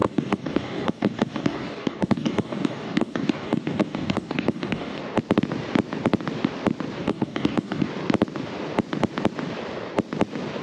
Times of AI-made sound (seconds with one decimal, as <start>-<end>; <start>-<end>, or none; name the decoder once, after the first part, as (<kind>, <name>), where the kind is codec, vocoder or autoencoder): 0.0-5.0 (codec, DAC); 7.0-7.9